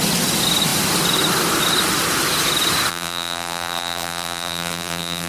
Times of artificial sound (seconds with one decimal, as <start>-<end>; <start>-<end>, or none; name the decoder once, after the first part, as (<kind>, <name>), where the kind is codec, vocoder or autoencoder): 2.9-5.3 (vocoder, BigVGAN v2)